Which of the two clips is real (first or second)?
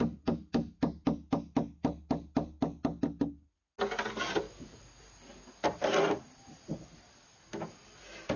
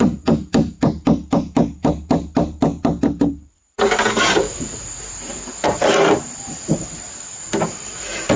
first